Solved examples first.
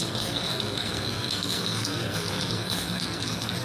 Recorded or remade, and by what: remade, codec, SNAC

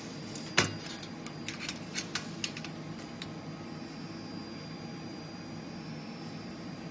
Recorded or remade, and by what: recorded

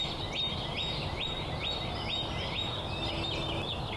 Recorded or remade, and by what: recorded